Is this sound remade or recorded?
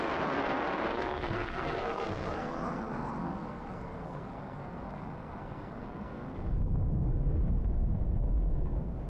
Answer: remade